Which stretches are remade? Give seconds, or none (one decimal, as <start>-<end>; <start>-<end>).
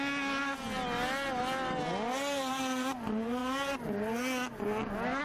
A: none